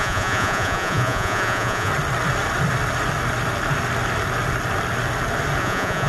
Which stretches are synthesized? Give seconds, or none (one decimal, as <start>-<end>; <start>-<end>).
0.0-1.9; 5.6-6.1